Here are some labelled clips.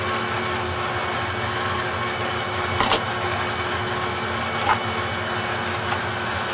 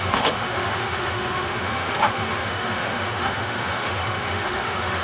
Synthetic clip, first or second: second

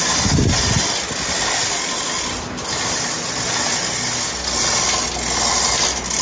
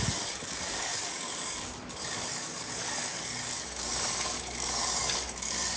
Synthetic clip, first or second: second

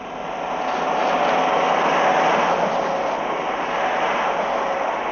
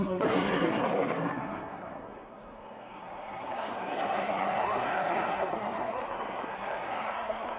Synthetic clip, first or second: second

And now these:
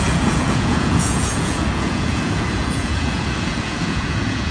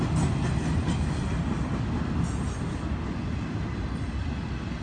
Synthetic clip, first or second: first